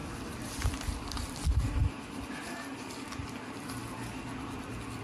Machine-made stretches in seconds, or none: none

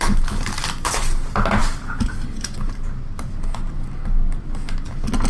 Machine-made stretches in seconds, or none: none